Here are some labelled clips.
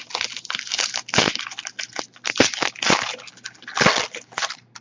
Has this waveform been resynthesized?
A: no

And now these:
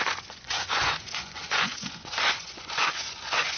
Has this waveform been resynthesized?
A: yes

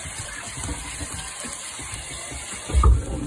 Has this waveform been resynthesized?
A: no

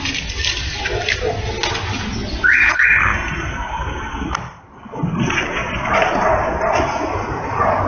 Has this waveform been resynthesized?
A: no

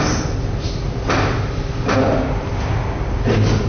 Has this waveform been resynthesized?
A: no